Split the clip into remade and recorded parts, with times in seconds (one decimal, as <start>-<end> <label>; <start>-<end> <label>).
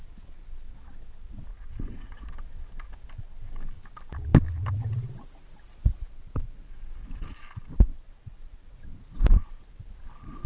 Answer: 0.0-1.5 recorded; 1.5-2.2 remade; 2.2-7.9 recorded; 7.9-8.9 remade; 8.9-10.5 recorded